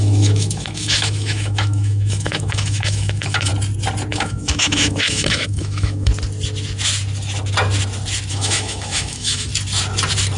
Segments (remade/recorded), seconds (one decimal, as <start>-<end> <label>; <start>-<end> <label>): 0.0-3.5 remade; 3.5-4.1 recorded; 4.1-6.1 remade; 6.1-8.3 recorded; 8.3-9.5 remade; 9.5-10.4 recorded